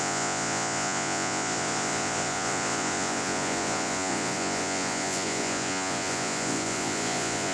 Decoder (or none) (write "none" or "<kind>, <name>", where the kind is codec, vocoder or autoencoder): vocoder, Vocos